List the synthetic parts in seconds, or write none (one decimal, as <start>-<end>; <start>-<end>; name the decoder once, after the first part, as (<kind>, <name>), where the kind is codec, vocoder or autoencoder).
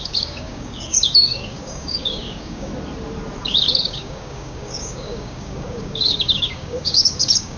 0.0-2.7 (codec, DAC); 3.4-7.6